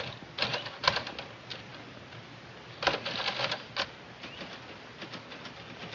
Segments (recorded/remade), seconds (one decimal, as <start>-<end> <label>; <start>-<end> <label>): 0.0-5.9 recorded